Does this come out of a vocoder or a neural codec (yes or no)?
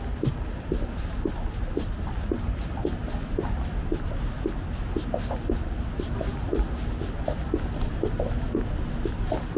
no